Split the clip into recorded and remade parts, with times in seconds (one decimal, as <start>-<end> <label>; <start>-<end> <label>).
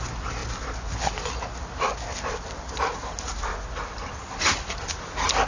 0.0-5.5 recorded